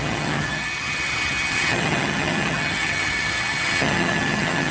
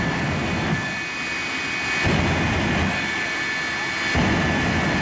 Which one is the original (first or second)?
second